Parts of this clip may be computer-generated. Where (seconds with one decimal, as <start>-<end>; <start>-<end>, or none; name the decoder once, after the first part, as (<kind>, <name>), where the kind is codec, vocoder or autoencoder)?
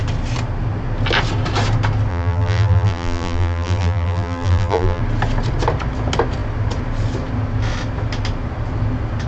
2.1-5.0 (vocoder, BigVGAN v2)